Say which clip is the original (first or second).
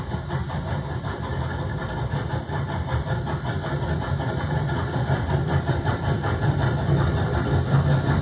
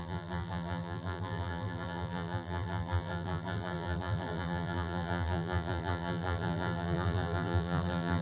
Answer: first